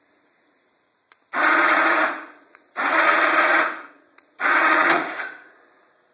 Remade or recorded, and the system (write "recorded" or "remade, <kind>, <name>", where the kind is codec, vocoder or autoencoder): remade, vocoder, Vocos